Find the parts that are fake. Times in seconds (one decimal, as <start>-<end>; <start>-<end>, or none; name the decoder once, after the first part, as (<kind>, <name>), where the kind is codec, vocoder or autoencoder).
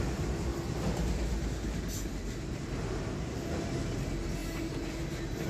none